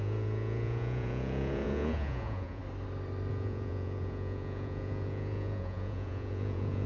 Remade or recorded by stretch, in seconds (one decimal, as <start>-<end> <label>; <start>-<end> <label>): 0.0-2.6 remade; 2.6-3.3 recorded; 3.3-6.9 remade